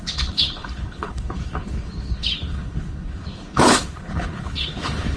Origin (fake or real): fake